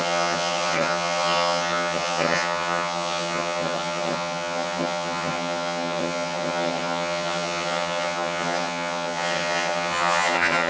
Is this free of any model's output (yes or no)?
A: no